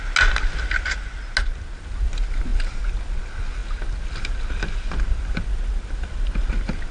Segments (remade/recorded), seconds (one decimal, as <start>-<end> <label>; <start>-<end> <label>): 0.0-6.9 recorded